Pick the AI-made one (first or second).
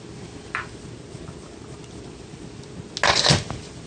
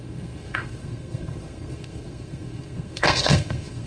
second